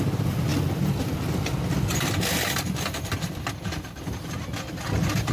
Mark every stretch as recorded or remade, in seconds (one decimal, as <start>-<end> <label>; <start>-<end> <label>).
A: 0.0-1.9 recorded; 1.9-4.8 remade; 4.8-5.3 recorded